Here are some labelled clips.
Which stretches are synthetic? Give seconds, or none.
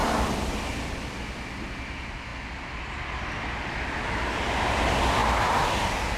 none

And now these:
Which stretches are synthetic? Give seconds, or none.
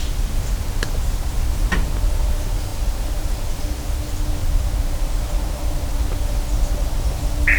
4.4-5.9 (vocoder, BigVGAN v2)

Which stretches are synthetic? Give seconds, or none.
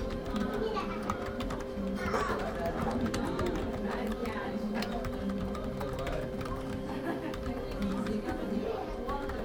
0.0-9.4 (vocoder, BigVGAN v2)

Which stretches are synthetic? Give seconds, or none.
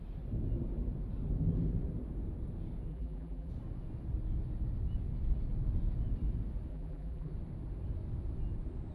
2.9-3.5 (vocoder, BigVGAN v2); 6.7-7.3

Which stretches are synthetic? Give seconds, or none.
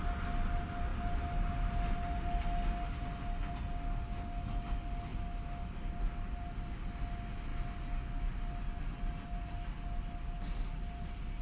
none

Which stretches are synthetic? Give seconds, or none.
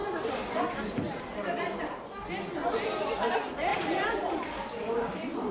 3.7-5.5 (vocoder, BigVGAN v2)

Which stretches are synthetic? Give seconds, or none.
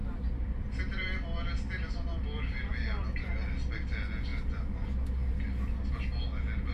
0.0-3.3 (vocoder, BigVGAN v2); 4.3-5.9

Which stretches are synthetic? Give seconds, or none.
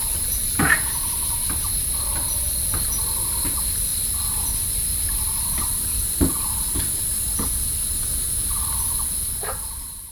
3.9-6.4 (vocoder, BigVGAN v2); 8.4-9.1